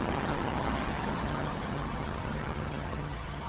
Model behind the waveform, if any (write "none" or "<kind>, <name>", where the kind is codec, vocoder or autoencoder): vocoder, HiFi-GAN